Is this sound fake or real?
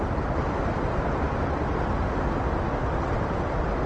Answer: real